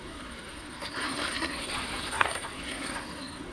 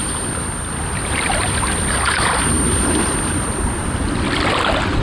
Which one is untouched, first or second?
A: second